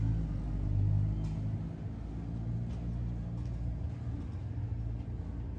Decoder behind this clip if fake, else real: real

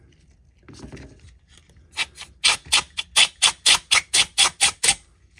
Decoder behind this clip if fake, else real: real